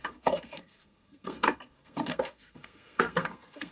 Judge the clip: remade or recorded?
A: remade